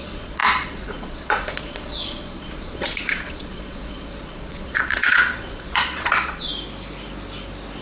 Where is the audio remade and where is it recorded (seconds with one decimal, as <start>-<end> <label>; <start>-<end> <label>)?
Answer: 0.0-6.5 remade; 6.5-7.8 recorded